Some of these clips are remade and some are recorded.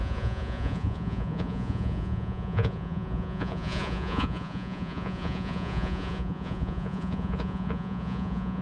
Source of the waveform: remade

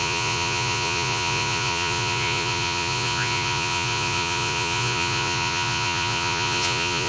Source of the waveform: remade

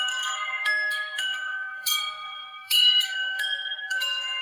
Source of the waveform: remade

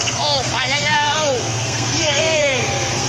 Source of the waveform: remade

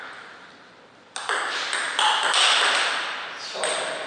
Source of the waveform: recorded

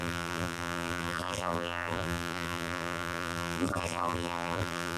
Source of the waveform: remade